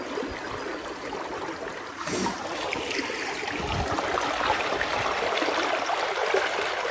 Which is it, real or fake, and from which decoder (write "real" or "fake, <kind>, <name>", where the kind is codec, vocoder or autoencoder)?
real